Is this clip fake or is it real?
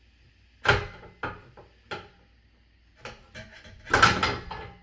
real